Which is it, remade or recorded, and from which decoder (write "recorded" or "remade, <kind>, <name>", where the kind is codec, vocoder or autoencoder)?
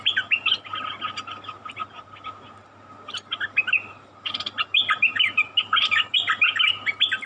recorded